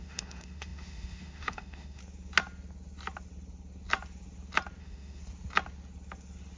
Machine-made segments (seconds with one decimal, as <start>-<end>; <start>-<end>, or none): 0.0-2.0; 4.8-5.2